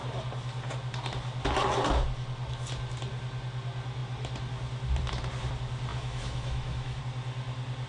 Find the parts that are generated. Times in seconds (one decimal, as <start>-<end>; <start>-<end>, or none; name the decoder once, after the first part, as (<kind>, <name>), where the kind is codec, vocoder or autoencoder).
5.9-7.0 (autoencoder, DAC-VAE)